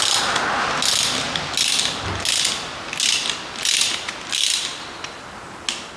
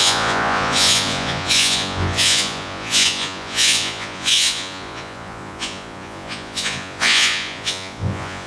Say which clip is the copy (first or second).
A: second